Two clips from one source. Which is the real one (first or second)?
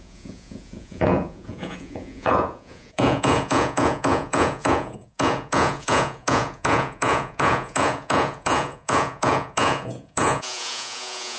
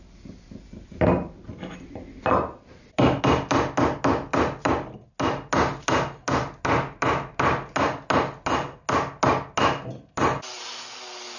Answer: second